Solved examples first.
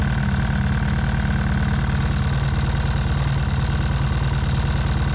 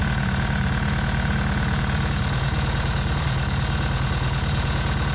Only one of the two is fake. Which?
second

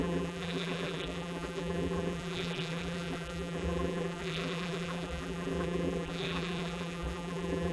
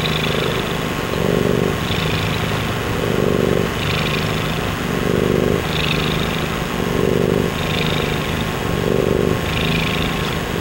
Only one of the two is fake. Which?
first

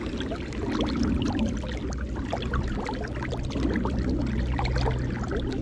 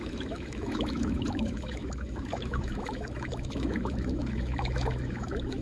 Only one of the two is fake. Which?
second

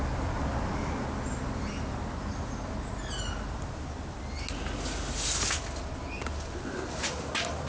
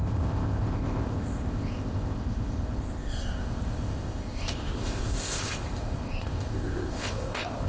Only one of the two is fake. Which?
second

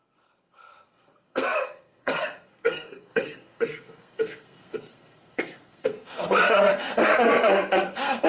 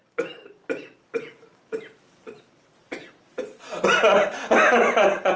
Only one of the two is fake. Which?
first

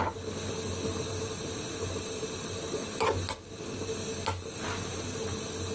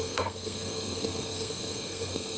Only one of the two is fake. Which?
second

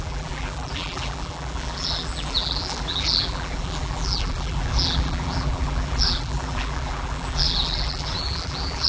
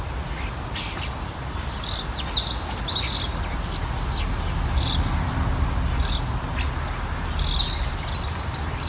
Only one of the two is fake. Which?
first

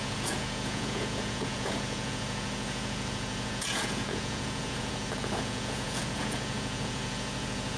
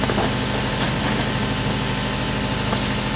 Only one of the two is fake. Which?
first